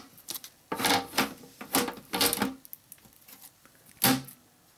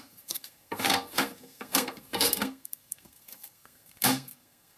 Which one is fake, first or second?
second